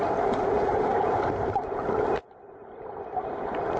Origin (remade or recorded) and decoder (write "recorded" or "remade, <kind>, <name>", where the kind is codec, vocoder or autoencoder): recorded